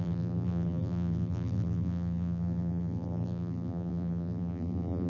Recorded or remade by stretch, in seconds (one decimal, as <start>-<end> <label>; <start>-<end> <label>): 0.0-5.1 remade